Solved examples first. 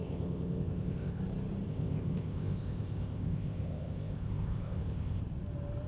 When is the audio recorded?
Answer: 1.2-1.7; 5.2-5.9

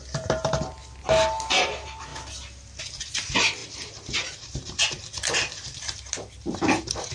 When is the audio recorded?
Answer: 0.8-1.5; 2.1-2.8

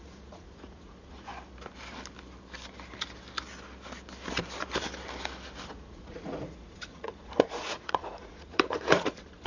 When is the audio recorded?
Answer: 1.3-5.7